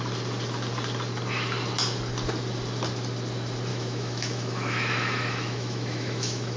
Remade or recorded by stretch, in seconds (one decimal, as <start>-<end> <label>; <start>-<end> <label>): 0.0-3.7 recorded; 3.7-6.6 remade